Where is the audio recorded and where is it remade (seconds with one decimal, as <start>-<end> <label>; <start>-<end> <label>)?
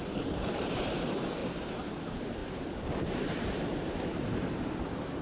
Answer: 0.0-5.2 remade